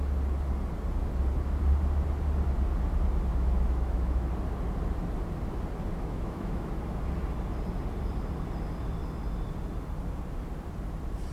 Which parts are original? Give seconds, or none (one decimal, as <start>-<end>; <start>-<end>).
0.0-3.3; 4.3-5.9; 6.7-11.3